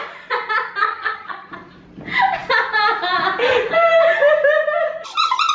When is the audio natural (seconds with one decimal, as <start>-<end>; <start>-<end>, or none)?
0.0-0.8; 1.5-5.5